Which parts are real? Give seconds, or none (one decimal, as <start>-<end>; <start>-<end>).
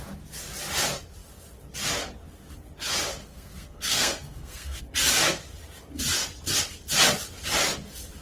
0.0-3.2; 4.8-8.2